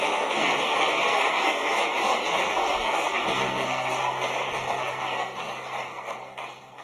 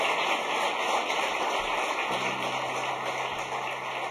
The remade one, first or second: first